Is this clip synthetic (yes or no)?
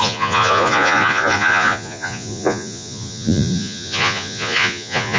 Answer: yes